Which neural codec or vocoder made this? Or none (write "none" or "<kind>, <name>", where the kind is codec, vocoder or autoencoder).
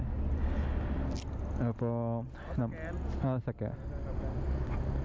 none